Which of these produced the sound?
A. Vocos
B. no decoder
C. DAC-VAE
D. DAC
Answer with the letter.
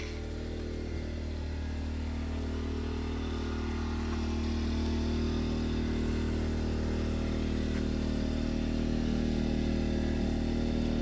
B